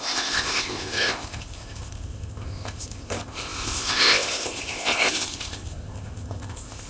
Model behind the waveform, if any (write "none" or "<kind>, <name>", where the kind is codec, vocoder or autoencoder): codec, ZipCodec